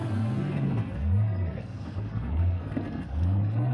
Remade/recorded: remade